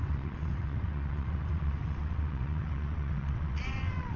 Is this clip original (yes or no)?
no